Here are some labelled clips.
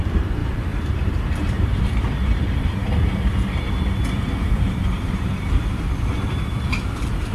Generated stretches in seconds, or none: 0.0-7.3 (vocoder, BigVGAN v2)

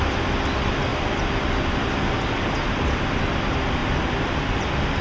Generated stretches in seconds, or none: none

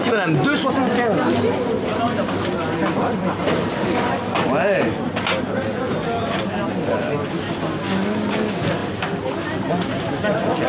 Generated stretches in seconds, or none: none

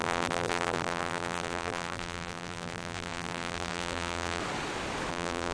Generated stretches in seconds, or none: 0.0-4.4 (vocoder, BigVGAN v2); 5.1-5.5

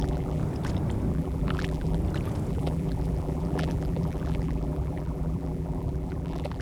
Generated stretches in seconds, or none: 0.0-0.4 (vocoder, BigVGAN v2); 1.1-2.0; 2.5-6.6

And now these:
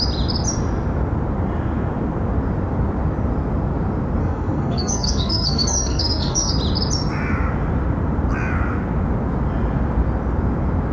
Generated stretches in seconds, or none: 4.2-6.5 (codec, SNAC)

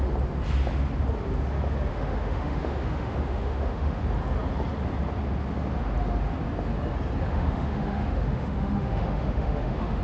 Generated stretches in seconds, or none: 1.9-4.0 (autoencoder, DAC-VAE); 7.3-10.0

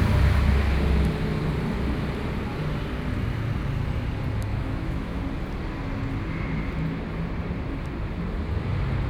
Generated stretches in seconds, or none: 4.5-5.2 (autoencoder, DAC-VAE)